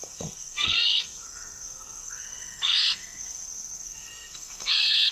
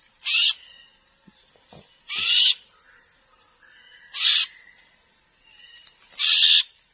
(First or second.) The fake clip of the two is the first